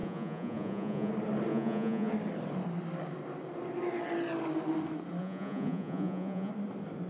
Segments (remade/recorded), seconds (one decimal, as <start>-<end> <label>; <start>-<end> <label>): 0.0-1.1 remade; 1.1-1.5 recorded; 1.5-2.1 remade; 2.1-5.2 recorded; 5.2-6.5 remade; 6.5-7.1 recorded